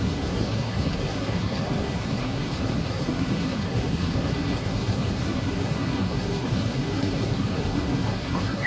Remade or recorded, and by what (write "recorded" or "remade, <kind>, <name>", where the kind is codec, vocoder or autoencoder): remade, codec, SNAC